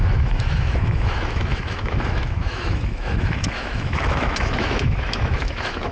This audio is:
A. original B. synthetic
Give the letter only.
B